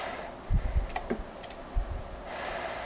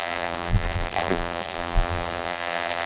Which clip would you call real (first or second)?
first